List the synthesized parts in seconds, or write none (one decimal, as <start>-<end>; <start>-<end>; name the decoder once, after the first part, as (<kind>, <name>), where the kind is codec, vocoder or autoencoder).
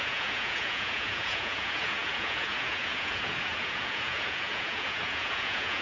0.0-5.8 (vocoder, Vocos)